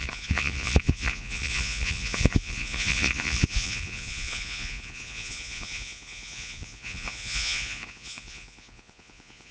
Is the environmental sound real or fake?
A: fake